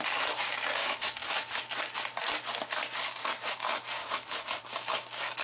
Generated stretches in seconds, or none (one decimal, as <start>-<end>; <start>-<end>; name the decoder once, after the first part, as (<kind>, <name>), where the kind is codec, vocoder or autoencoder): 0.8-1.6 (autoencoder, DAC-VAE); 4.0-4.6